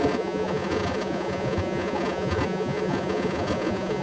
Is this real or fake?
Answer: fake